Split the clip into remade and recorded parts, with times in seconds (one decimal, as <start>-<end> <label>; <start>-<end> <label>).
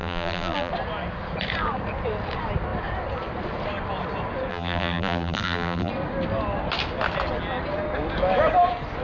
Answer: 0.0-0.7 remade; 0.7-4.5 recorded; 4.5-5.9 remade; 5.9-9.0 recorded